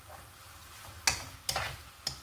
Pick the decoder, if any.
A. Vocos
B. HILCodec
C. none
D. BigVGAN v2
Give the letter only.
C